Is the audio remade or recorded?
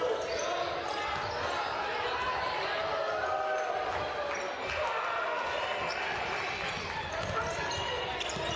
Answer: recorded